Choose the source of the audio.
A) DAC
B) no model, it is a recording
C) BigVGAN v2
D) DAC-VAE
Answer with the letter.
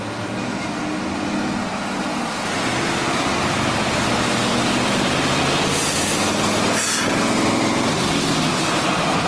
B